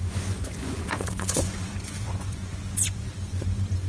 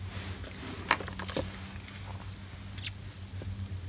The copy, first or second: first